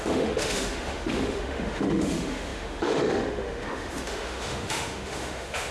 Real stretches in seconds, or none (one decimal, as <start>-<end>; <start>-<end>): none

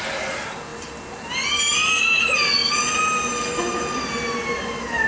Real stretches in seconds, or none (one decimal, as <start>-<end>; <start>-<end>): 0.0-5.1

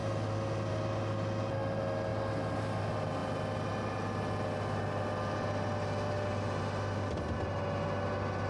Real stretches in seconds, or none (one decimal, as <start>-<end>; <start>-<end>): 0.0-8.5